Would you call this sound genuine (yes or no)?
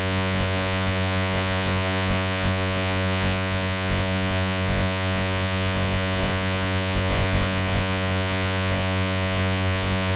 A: no